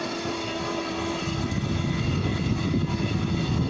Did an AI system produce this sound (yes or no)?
no